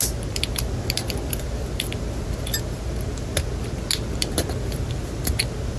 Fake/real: real